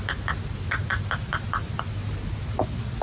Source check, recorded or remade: recorded